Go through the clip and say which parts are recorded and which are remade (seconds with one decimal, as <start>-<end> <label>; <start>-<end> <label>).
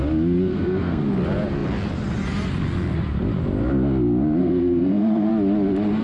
0.0-0.5 recorded; 0.5-1.0 remade; 1.0-4.4 recorded; 4.4-5.3 remade; 5.3-6.0 recorded